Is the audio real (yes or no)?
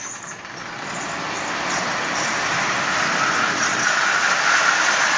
yes